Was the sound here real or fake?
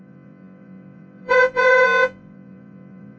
fake